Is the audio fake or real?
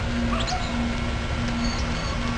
real